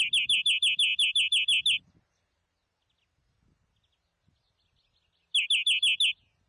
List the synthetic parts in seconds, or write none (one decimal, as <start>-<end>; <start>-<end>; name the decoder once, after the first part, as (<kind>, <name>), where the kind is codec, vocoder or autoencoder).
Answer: none